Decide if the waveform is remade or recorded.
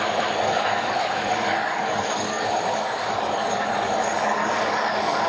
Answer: remade